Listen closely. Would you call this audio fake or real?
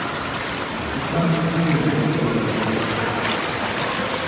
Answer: fake